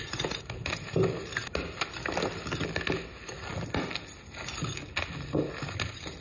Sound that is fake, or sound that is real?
real